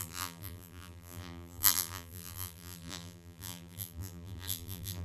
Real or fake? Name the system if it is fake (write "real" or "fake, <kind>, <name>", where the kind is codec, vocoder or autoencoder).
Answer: fake, vocoder, BigVGAN v2